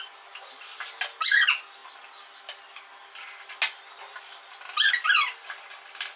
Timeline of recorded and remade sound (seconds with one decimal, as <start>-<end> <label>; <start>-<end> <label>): 0.0-6.2 recorded